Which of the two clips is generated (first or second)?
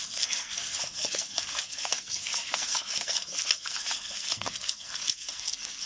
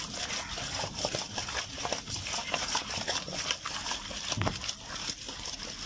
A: first